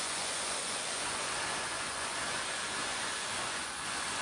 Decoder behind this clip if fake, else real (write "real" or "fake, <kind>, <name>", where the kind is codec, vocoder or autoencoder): fake, vocoder, Vocos